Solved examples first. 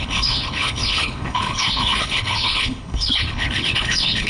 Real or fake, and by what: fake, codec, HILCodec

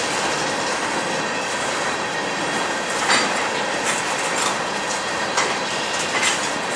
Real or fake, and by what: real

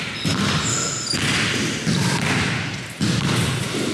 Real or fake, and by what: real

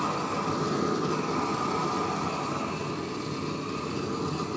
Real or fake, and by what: real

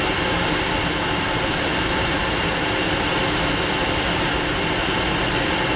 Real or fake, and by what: real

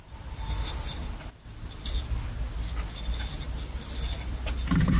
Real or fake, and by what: real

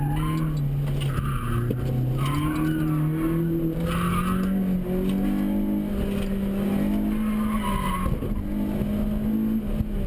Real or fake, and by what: real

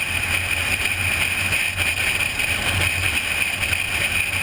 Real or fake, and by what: real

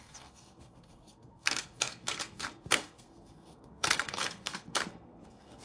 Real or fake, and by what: fake, codec, SNAC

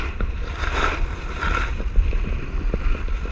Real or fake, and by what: real